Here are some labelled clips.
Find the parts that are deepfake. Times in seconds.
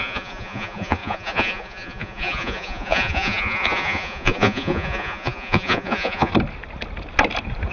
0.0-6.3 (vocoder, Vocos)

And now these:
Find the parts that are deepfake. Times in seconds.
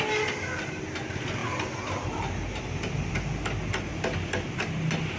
none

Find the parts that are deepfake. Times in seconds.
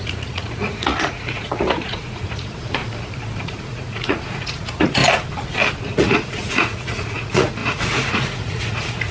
0.0-2.8 (vocoder, Vocos); 3.4-5.0; 5.8-9.1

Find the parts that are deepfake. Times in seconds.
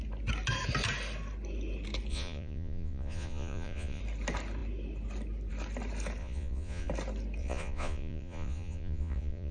2.1-4.0 (vocoder, Vocos); 6.2-6.9; 7.4-9.5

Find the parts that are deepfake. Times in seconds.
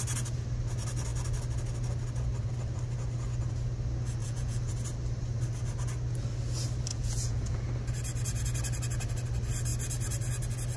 4.2-4.7 (vocoder, Vocos); 6.9-7.7